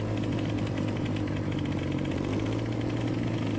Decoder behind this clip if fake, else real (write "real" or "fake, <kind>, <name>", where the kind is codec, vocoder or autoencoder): real